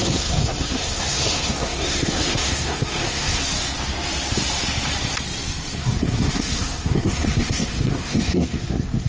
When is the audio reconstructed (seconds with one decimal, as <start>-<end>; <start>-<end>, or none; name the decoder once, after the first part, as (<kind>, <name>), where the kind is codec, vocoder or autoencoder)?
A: 0.0-3.4 (codec, SNAC); 5.8-9.1

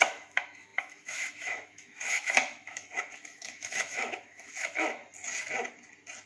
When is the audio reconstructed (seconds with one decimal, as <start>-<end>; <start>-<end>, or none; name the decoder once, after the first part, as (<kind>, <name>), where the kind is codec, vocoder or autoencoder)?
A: 0.0-5.0 (autoencoder, DAC-VAE)

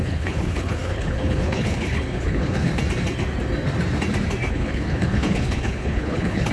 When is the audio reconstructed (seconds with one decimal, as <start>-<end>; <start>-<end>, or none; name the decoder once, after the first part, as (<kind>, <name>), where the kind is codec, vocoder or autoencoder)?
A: 0.0-2.7 (codec, HILCodec); 4.5-6.5

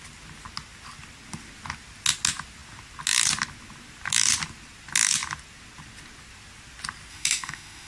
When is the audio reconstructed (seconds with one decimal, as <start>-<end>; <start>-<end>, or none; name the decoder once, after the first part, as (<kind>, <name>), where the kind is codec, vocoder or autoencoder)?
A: 7.1-7.9 (autoencoder, DAC-VAE)

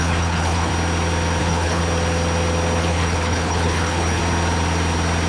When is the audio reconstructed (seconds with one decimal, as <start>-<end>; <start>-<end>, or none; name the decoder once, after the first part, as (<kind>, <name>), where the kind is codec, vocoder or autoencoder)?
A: 0.0-0.7 (codec, HILCodec); 1.4-1.8; 2.8-4.2

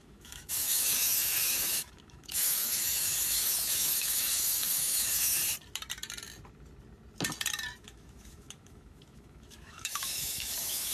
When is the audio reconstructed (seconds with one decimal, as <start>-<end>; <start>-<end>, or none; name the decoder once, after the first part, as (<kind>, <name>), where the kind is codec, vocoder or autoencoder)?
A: 0.0-5.4 (autoencoder, DAC-VAE); 7.8-10.9

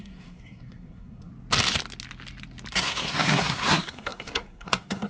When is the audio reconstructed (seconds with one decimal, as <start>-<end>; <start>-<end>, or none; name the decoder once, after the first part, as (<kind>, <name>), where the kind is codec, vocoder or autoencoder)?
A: 0.0-1.3 (codec, SNAC); 2.7-5.1

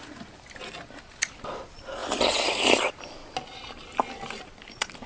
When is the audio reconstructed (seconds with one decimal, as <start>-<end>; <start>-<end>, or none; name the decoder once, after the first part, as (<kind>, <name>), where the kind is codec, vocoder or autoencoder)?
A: none